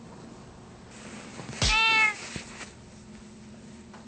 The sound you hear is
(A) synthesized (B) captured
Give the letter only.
B